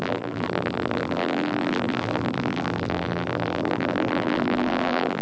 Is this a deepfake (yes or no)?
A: yes